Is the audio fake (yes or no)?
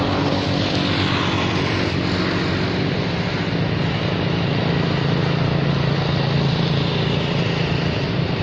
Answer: no